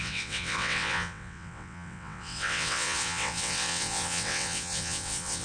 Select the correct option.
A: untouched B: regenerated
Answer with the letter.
B